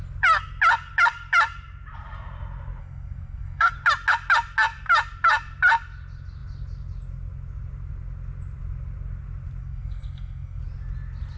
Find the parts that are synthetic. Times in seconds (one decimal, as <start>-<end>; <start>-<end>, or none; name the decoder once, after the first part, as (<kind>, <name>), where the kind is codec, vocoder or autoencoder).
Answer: 2.8-3.7 (codec, SNAC); 9.6-10.6